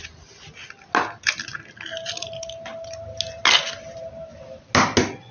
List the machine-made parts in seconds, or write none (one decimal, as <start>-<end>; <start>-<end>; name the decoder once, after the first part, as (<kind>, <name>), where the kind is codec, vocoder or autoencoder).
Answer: none